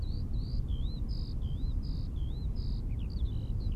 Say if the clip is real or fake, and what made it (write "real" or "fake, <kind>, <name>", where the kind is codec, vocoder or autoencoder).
real